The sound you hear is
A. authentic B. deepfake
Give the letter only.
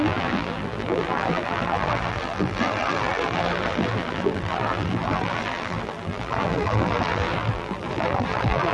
B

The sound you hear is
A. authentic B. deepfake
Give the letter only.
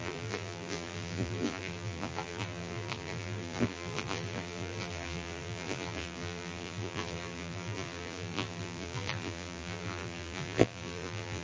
B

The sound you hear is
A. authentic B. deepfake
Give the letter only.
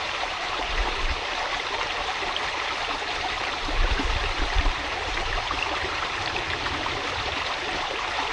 B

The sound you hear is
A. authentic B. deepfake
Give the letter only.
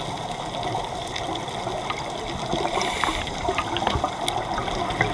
A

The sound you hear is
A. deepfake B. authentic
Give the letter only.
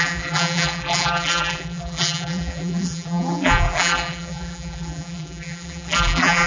A